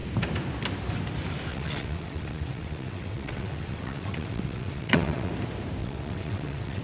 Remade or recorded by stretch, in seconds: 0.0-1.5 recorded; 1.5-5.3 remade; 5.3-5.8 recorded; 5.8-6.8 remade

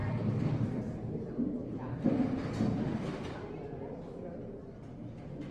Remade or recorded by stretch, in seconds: 0.0-0.8 remade; 0.8-1.6 recorded; 1.6-4.9 remade; 4.9-5.5 recorded

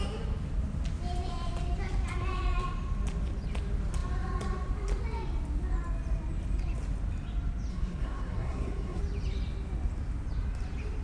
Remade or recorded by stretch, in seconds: 0.0-7.7 recorded; 7.7-9.0 remade; 9.0-11.0 recorded